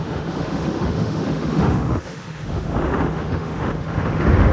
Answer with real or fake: fake